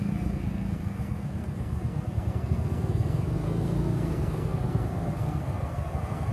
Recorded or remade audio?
remade